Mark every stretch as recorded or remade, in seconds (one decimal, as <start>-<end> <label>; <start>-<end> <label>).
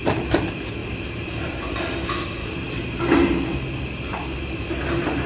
0.0-0.8 recorded; 0.8-1.5 remade; 1.5-2.4 recorded; 2.4-3.0 remade; 3.0-5.3 recorded